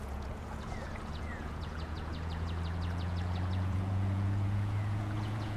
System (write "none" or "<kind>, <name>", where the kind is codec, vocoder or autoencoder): vocoder, Vocos